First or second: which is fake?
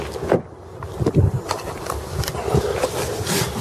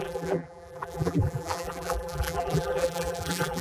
second